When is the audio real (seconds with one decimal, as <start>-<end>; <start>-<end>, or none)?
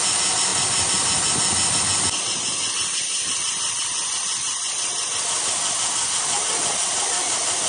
0.0-7.7